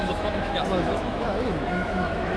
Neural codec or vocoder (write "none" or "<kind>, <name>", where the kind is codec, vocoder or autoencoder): autoencoder, DAC-VAE